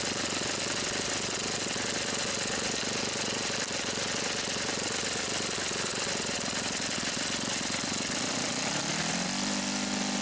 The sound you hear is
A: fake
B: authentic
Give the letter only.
B